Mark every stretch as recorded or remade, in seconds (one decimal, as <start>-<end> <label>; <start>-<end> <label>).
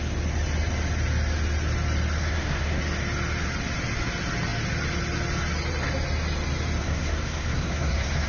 0.0-2.2 recorded; 2.2-2.8 remade; 2.8-6.8 recorded; 6.8-8.3 remade